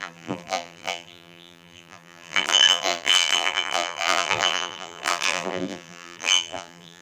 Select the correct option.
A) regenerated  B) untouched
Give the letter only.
A